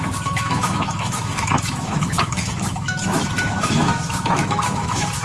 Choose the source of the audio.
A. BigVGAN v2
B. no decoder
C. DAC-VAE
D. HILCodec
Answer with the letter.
C